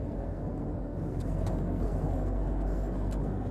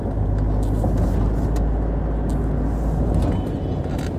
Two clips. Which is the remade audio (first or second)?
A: first